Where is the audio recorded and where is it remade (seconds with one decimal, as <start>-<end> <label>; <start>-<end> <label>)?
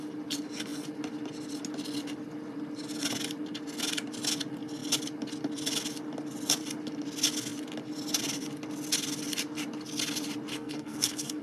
0.0-10.5 recorded; 10.5-11.4 remade